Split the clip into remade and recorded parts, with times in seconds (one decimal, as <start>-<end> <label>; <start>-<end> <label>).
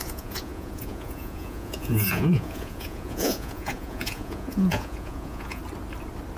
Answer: 0.0-5.6 remade; 5.6-6.4 recorded